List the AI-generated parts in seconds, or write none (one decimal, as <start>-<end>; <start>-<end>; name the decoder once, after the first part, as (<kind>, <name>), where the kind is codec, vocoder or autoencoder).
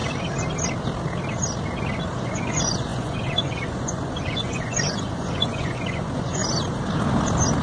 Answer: 2.2-6.4 (vocoder, Vocos)